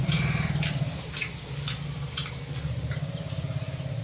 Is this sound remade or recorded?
recorded